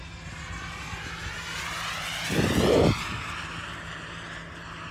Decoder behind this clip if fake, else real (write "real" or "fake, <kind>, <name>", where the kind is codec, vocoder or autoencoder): real